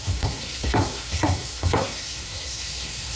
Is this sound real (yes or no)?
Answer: no